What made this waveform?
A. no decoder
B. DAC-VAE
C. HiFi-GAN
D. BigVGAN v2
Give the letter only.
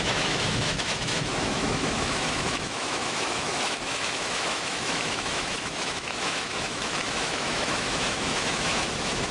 B